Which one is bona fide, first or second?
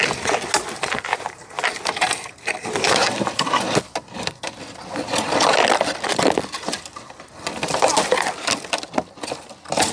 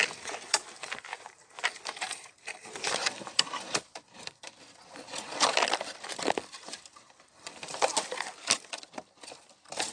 first